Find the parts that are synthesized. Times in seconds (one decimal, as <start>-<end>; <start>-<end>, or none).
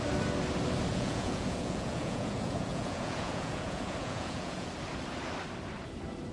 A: 0.9-4.7